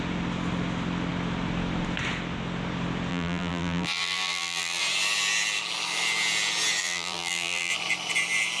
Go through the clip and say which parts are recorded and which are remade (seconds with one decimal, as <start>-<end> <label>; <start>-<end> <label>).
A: 0.0-3.1 recorded; 3.1-4.8 remade; 4.8-6.8 recorded; 6.8-7.7 remade; 7.7-8.6 recorded